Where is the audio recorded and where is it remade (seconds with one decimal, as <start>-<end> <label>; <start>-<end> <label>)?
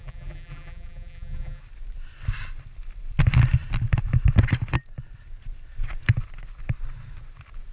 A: 0.0-1.6 remade; 1.6-7.7 recorded